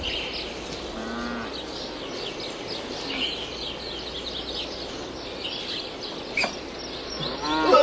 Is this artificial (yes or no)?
no